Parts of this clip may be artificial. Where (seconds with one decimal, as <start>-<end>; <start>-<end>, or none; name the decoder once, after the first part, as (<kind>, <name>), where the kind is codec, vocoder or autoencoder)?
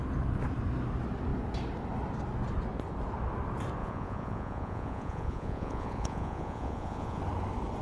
3.8-7.2 (vocoder, Vocos)